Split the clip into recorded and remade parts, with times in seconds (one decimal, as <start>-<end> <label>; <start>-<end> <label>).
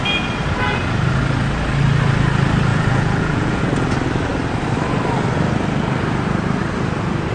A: 0.0-2.7 recorded; 2.7-3.6 remade; 3.6-7.3 recorded